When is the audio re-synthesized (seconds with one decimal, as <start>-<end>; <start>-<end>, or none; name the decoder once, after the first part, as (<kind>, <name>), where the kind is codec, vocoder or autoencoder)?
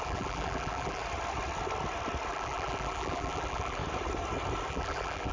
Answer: 0.0-1.0 (vocoder, BigVGAN v2); 2.3-3.8; 4.7-5.3